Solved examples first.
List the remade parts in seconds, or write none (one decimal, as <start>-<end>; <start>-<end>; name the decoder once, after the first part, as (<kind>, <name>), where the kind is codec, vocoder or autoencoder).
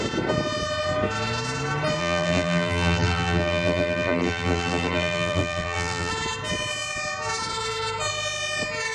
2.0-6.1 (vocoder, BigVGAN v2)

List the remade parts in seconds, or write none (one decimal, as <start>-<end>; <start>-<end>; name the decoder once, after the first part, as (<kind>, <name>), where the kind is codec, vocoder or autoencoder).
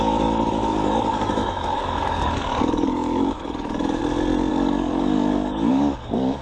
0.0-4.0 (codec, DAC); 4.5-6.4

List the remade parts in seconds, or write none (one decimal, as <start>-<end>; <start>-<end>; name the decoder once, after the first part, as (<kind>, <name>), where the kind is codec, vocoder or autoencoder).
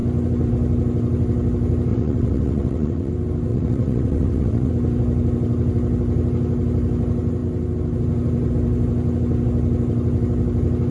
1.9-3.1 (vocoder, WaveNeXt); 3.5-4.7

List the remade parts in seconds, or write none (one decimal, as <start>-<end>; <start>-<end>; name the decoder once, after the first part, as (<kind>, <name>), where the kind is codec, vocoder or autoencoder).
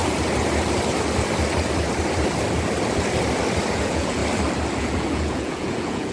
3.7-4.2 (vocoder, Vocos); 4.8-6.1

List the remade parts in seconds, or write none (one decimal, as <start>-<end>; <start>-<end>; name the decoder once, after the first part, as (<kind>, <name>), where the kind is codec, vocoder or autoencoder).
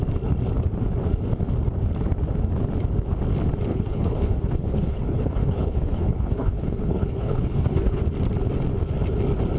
3.7-8.0 (codec, HILCodec)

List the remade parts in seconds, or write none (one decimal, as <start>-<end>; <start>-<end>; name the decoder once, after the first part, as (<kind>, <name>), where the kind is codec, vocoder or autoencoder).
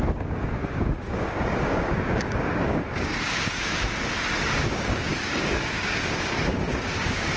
0.0-3.8 (codec, DAC); 4.6-7.4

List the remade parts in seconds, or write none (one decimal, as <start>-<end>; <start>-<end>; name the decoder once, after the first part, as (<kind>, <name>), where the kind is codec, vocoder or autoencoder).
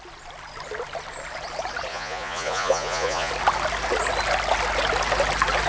1.9-3.3 (vocoder, Vocos)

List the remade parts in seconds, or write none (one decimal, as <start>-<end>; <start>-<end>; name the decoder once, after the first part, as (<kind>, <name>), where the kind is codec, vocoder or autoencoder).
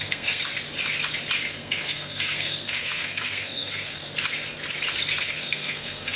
0.0-0.4 (codec, SNAC); 1.5-4.0; 5.3-6.2